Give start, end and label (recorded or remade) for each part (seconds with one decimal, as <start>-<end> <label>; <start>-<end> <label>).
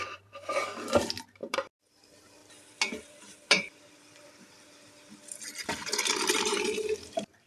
0.0-2.4 remade; 2.4-3.0 recorded; 3.0-7.5 remade